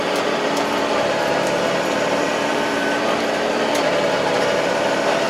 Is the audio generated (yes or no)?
yes